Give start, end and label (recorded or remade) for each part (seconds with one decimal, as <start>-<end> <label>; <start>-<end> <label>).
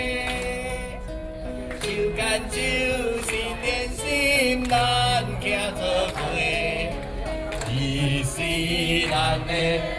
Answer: 0.0-7.9 recorded; 7.9-9.6 remade; 9.6-10.0 recorded